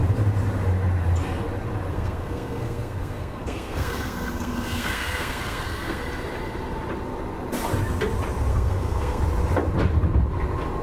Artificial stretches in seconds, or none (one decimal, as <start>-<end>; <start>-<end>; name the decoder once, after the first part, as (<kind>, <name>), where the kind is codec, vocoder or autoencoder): 1.9-6.0 (codec, SNAC); 8.5-9.2

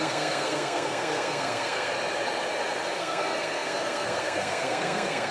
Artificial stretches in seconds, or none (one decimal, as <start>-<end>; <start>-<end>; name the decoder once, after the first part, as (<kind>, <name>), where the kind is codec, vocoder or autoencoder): 0.0-1.9 (codec, SNAC); 3.0-5.3